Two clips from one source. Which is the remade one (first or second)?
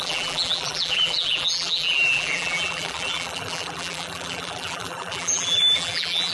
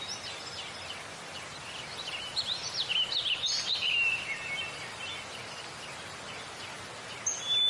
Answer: first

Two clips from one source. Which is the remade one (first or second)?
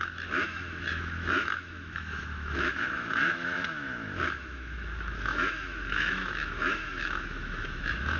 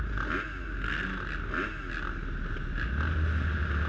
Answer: first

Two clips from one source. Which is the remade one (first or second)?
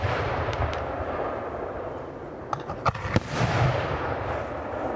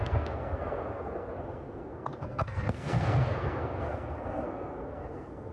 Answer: second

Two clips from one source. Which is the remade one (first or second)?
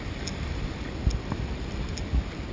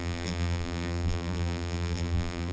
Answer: second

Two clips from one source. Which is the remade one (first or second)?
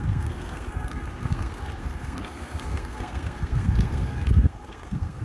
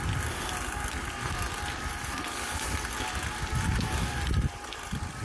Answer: first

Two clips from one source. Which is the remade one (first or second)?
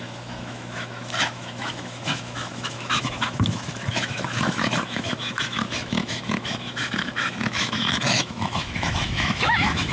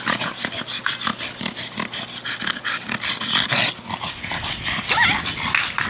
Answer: first